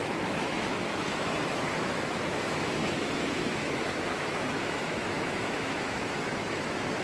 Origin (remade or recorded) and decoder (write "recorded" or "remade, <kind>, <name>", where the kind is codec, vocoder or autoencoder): remade, autoencoder, DAC-VAE